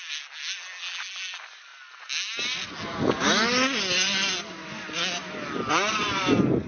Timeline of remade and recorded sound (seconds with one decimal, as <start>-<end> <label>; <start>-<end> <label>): 0.0-6.7 recorded